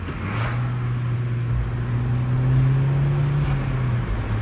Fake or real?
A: real